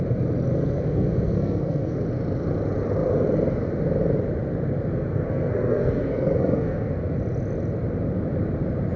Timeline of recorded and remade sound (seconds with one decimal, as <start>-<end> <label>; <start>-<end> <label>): 0.0-0.5 recorded; 0.5-2.0 remade; 2.0-5.0 recorded; 5.0-7.2 remade; 7.2-9.0 recorded